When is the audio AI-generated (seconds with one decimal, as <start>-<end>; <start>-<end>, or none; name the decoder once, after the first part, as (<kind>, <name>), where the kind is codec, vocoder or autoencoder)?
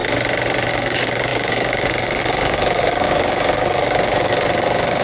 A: 0.7-5.0 (codec, DAC)